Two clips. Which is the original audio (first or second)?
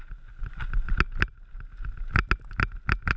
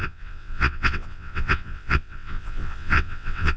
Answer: first